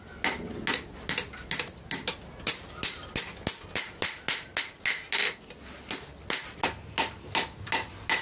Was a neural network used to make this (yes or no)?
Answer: no